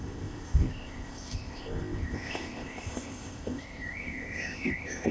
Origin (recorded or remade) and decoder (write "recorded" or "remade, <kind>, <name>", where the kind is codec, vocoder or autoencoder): remade, codec, ZipCodec